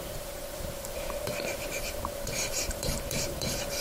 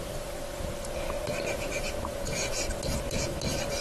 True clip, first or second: second